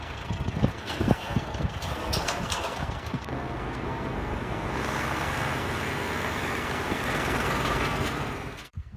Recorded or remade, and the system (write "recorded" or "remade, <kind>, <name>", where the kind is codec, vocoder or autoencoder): remade, codec, SNAC